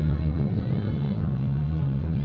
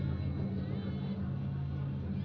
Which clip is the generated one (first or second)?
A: first